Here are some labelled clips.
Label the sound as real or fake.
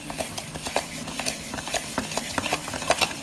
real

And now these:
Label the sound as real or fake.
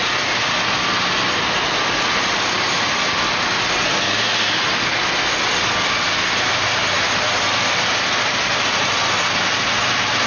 real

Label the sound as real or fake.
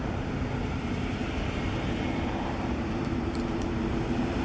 fake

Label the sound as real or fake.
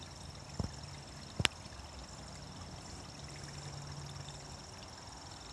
real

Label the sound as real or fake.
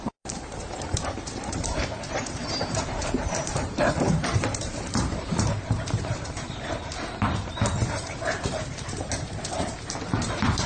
fake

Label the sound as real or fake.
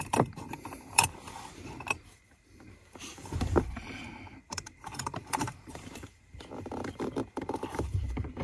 fake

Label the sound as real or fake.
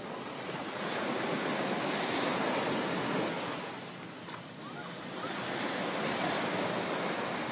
real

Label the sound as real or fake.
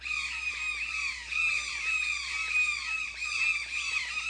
fake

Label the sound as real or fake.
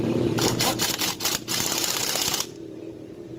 fake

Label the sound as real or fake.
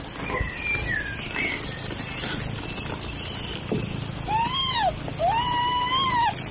real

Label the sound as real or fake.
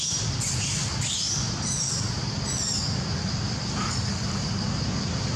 fake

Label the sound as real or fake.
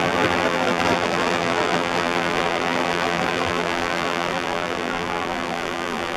fake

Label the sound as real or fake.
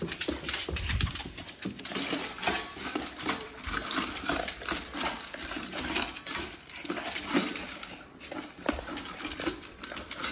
fake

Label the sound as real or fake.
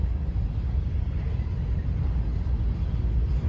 real